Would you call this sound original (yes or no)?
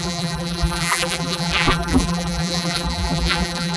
no